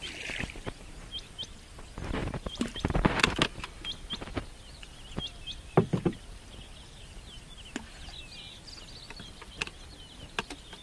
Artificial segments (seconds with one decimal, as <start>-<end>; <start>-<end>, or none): none